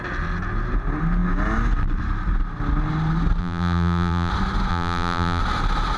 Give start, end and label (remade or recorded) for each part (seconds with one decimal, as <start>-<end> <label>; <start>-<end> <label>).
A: 0.0-3.4 recorded; 3.4-4.3 remade; 4.3-4.7 recorded; 4.7-5.4 remade; 5.4-6.0 recorded